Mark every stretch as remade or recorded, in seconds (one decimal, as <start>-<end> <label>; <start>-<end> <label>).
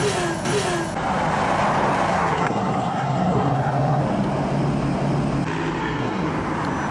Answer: 0.0-2.1 recorded; 2.1-4.0 remade; 4.0-5.8 recorded; 5.8-6.3 remade; 6.3-6.9 recorded